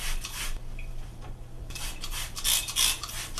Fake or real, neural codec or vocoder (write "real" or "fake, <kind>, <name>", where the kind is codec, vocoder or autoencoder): fake, vocoder, BigVGAN v2